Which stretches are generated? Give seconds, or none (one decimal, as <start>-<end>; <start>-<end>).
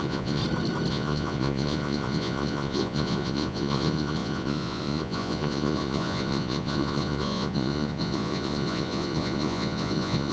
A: 0.0-0.4; 0.9-10.3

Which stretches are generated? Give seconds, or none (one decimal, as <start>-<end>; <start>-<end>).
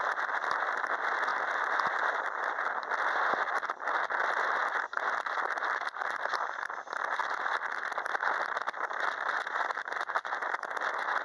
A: none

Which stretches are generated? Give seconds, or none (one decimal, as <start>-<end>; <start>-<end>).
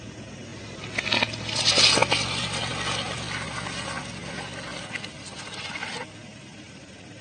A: 5.2-5.9; 6.5-7.2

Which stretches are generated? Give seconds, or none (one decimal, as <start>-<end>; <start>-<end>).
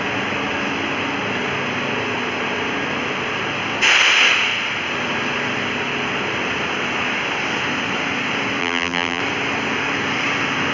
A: 8.6-9.2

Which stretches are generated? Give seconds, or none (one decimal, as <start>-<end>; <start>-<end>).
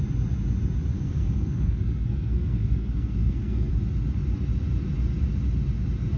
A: 0.9-3.7